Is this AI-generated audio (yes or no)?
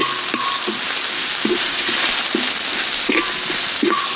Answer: no